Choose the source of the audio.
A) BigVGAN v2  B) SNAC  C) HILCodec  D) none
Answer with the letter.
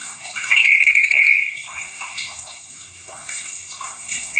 B